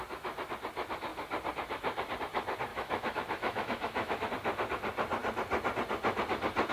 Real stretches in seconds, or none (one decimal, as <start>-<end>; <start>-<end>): 0.0-2.7; 4.3-6.7